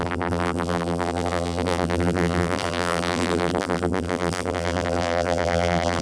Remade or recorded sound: remade